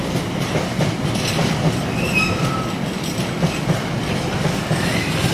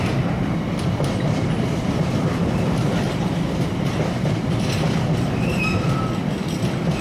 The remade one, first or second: second